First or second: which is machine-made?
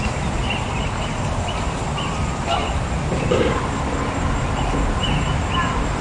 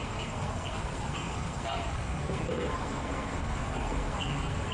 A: second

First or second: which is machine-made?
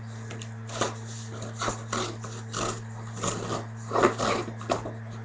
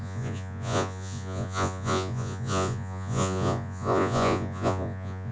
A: second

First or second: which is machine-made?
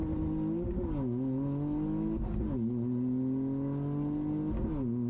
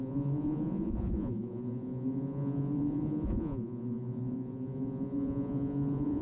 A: second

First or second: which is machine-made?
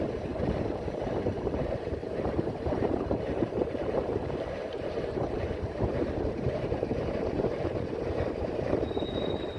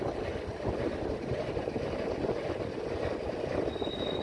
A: first